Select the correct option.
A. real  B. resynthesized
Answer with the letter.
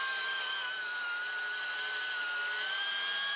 A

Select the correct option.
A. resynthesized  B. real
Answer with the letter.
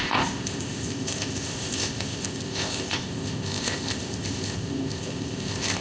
A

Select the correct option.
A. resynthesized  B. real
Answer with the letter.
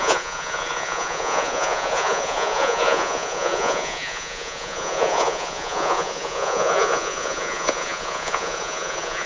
A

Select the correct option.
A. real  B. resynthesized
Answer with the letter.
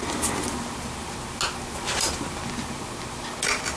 A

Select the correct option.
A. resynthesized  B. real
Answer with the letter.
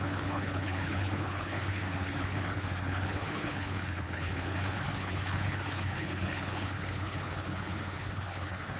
A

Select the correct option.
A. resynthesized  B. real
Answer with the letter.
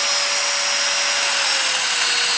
B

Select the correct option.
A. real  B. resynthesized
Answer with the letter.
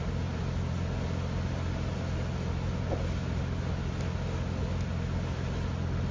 A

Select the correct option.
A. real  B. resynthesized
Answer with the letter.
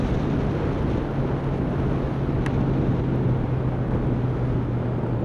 A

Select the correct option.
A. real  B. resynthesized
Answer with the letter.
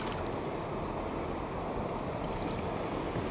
A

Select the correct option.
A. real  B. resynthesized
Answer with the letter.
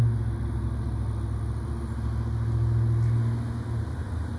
A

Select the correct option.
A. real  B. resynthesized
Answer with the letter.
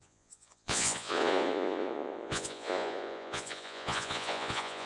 B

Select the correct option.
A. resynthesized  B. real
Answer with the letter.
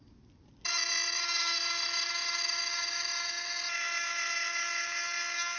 B